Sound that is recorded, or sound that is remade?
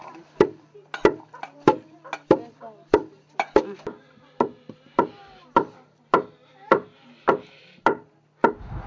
recorded